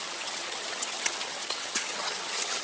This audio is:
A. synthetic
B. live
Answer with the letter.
A